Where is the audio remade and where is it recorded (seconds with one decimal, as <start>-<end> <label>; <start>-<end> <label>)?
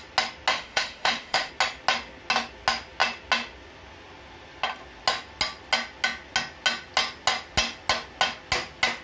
0.0-0.5 recorded; 0.5-1.5 remade; 1.5-9.0 recorded